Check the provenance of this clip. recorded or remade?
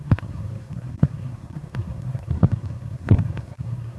remade